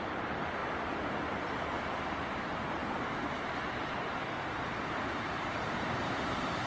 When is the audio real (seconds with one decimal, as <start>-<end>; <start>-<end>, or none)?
0.6-1.5; 2.8-5.0